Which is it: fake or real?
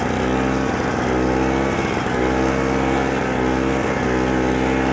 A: real